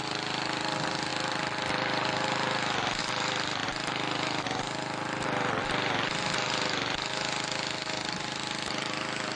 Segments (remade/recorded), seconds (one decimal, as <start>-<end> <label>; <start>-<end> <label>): 0.0-1.1 remade; 1.1-3.0 recorded; 3.0-3.6 remade; 3.6-8.2 recorded; 8.2-9.4 remade